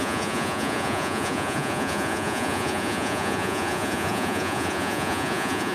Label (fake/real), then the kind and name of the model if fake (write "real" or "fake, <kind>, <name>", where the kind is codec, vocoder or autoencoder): fake, vocoder, Vocos